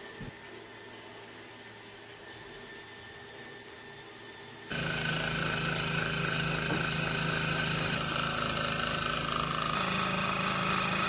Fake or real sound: real